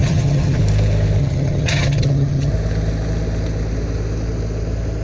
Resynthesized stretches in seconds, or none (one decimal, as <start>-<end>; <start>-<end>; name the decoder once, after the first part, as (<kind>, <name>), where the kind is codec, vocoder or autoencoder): 0.0-0.6 (vocoder, HiFi-GAN); 1.2-2.5